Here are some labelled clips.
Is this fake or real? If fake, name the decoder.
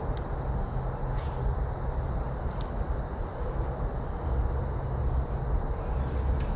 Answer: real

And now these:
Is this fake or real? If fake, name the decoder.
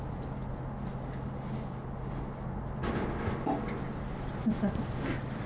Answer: real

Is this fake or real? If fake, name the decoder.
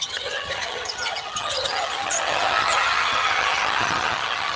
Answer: fake, vocoder, HiFi-GAN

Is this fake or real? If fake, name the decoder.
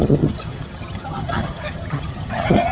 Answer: fake, vocoder, HiFi-GAN